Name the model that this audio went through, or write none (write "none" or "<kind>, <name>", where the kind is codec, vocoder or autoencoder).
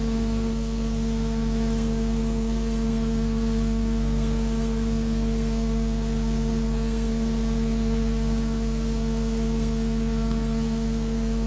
codec, SNAC